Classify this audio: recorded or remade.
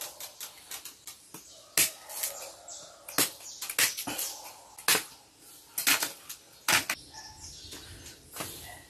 recorded